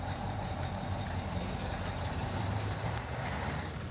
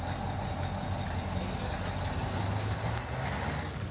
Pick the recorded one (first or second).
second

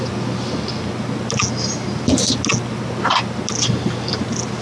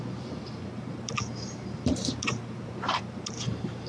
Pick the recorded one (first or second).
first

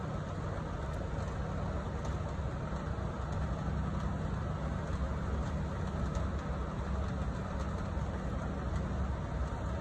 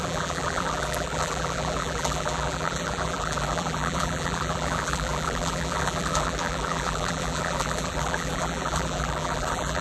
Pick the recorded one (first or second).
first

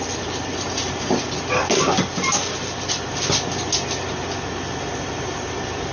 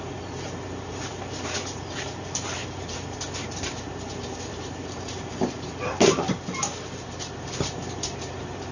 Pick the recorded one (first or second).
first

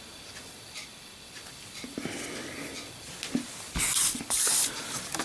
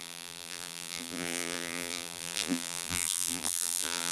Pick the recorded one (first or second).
first